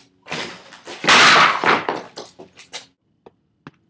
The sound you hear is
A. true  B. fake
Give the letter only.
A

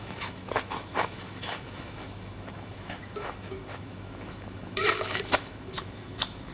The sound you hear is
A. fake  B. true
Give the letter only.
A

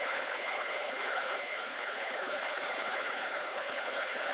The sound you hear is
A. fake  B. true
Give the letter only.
A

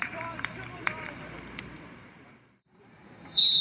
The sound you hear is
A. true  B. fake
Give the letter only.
B